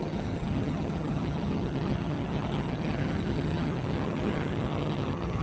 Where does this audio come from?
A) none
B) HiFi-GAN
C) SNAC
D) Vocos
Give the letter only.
B